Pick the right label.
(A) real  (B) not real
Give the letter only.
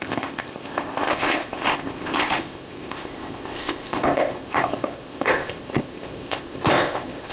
B